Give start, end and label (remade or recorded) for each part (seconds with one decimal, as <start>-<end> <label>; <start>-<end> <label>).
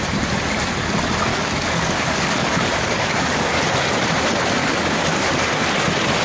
0.0-1.3 recorded; 1.3-3.6 remade; 3.6-4.6 recorded; 4.6-5.3 remade; 5.3-6.2 recorded